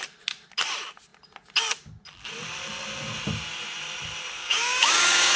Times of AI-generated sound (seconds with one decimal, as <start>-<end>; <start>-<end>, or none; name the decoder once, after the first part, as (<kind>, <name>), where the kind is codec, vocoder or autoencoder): 4.4-5.4 (codec, DAC)